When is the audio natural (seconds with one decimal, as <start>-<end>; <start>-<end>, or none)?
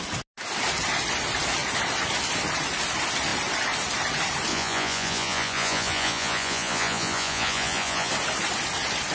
0.0-4.5; 8.1-9.1